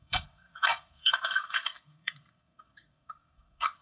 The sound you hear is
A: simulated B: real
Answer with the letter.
A